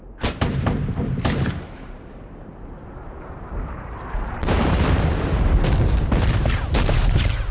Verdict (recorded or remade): remade